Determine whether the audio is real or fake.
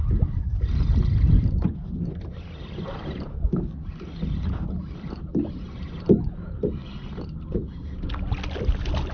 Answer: real